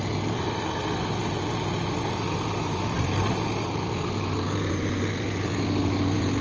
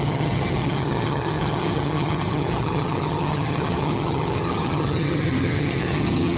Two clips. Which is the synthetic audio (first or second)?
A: second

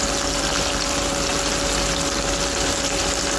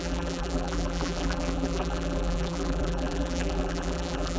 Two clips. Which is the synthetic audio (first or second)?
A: second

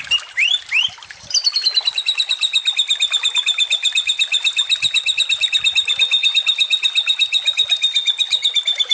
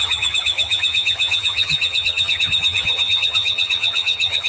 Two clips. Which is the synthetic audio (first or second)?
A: second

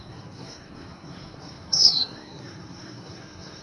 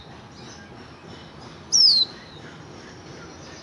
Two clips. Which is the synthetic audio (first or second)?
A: first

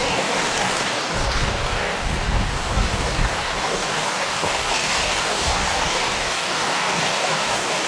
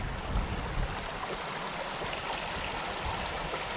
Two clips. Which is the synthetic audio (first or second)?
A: first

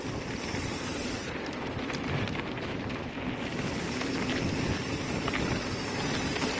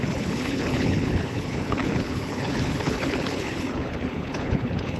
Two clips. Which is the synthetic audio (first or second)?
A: second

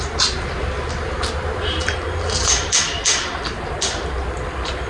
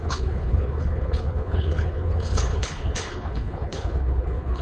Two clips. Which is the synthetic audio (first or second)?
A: second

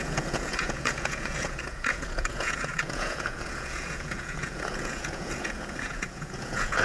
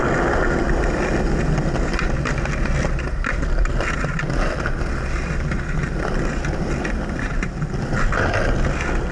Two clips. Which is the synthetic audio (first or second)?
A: first